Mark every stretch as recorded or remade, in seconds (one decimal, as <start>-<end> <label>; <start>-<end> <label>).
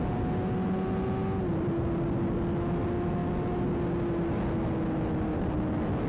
0.0-6.1 recorded